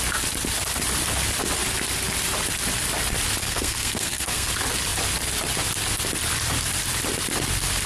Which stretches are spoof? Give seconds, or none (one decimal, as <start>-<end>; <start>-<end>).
3.4-4.5